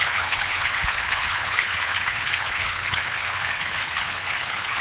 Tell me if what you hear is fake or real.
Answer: fake